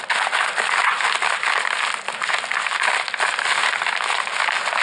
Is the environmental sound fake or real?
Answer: real